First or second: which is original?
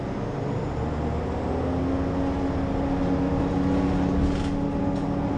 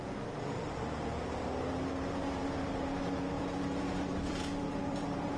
first